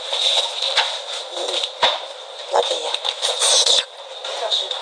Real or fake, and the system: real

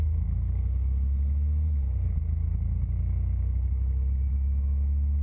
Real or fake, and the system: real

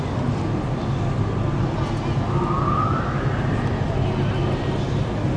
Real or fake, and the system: real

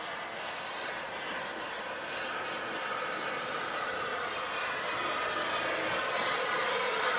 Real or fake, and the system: real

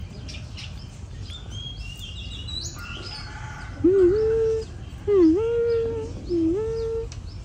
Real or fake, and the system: real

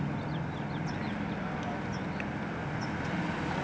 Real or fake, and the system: real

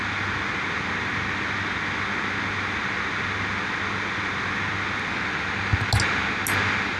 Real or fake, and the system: real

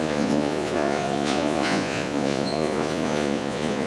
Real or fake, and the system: fake, vocoder, Vocos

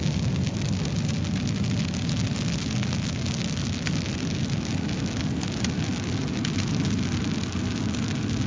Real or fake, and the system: real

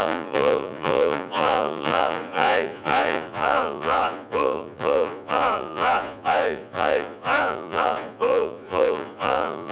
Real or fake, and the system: fake, vocoder, Vocos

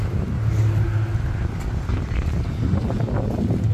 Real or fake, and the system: real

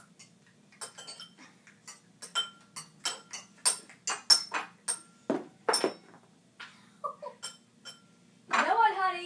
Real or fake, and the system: real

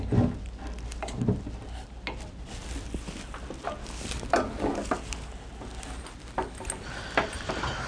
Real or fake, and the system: real